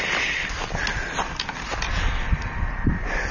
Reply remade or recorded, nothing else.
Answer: recorded